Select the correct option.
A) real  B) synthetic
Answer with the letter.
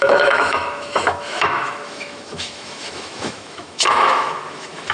B